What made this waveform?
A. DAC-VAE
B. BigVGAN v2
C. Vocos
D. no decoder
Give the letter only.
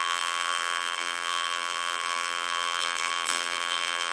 B